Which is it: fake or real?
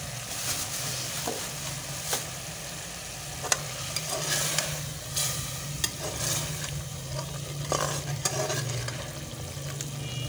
real